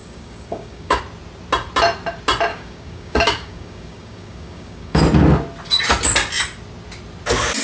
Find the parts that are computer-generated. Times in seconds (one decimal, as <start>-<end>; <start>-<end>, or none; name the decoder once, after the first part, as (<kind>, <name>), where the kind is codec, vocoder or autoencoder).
0.0-1.0 (codec, DAC); 2.5-5.0